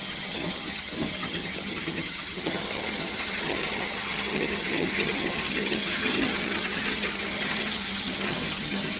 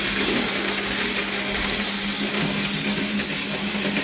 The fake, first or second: first